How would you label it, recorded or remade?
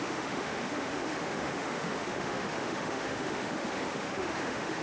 remade